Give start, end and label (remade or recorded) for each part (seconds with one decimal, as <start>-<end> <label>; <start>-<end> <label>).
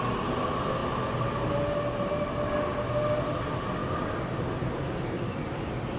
0.0-6.0 recorded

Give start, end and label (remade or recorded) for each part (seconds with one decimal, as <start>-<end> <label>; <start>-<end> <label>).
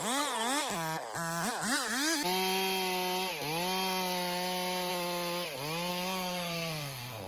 0.0-5.9 recorded; 5.9-7.3 remade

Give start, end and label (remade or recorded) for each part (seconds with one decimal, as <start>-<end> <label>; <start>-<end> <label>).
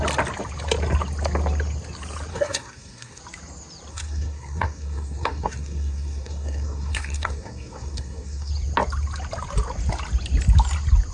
0.0-2.3 recorded; 2.3-3.2 remade; 3.2-3.9 recorded; 3.9-8.5 remade; 8.5-11.1 recorded